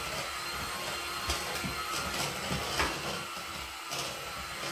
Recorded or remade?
recorded